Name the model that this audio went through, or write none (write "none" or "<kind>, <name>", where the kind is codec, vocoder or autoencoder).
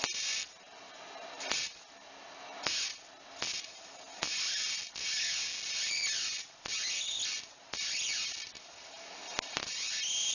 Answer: none